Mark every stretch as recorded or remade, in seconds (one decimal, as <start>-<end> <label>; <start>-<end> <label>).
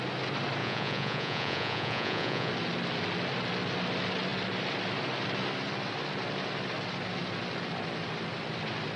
0.0-0.6 recorded; 0.6-2.5 remade; 2.5-9.0 recorded